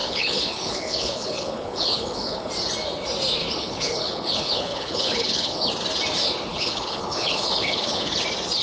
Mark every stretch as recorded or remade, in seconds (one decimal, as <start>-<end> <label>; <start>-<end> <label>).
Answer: 0.0-2.5 remade; 2.5-3.4 recorded; 3.4-5.7 remade; 5.7-6.5 recorded; 6.5-8.2 remade; 8.2-8.6 recorded